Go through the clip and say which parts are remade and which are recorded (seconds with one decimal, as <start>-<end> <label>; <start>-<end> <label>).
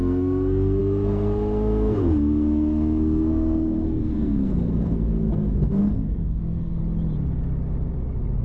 0.0-6.8 remade; 6.8-8.4 recorded